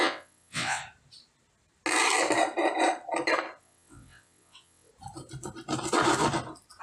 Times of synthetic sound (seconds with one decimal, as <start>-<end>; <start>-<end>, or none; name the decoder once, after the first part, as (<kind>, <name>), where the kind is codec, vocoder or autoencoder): 0.0-0.8 (vocoder, WaveNeXt); 3.6-4.9